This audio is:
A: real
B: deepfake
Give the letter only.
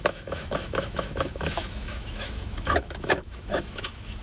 B